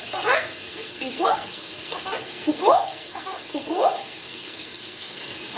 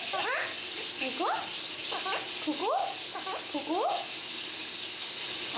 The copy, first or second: first